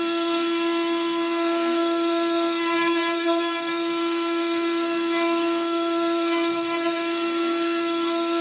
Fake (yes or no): yes